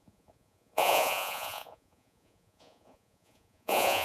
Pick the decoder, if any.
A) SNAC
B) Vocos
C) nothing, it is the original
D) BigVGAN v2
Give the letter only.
B